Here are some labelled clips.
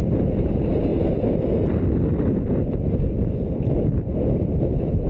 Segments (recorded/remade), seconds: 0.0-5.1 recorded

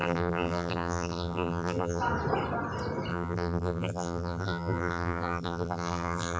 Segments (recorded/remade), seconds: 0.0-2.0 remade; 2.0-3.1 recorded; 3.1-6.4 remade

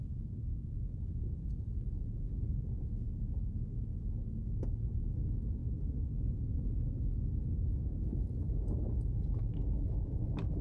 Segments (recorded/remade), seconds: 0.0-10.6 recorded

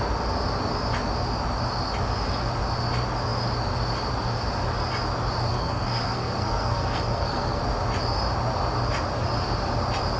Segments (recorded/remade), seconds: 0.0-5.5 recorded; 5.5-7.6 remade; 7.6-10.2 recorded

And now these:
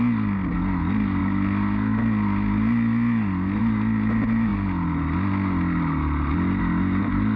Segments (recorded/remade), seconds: 0.0-7.4 recorded

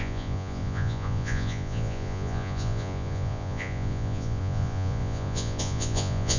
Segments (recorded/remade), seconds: 0.0-6.4 remade

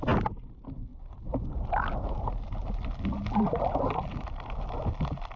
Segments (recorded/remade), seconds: 0.0-5.4 recorded